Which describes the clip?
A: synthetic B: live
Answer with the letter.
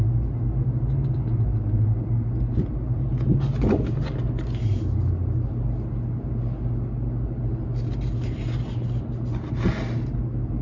B